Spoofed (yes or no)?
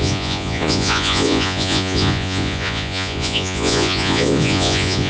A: yes